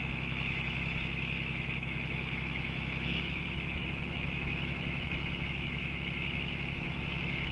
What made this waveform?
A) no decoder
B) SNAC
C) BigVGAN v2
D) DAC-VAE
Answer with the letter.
D